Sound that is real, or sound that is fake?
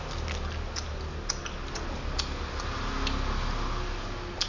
real